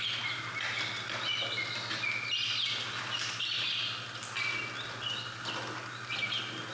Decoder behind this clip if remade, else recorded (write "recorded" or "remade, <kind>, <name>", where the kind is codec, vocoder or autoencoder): recorded